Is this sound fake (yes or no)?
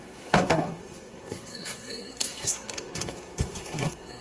yes